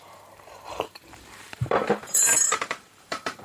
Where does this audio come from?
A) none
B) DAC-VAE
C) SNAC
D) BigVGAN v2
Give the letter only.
D